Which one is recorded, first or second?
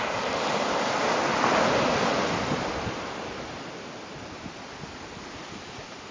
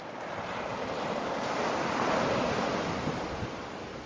first